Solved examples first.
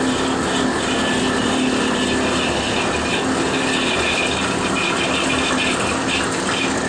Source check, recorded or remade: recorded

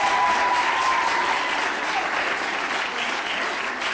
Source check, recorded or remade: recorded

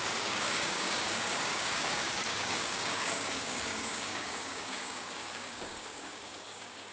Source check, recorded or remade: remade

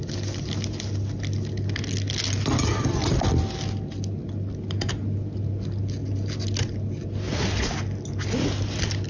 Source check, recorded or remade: recorded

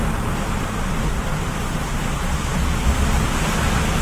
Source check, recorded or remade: recorded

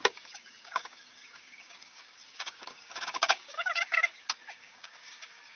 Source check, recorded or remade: remade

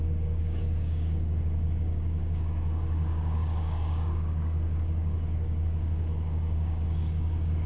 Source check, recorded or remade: remade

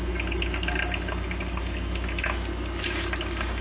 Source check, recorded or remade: recorded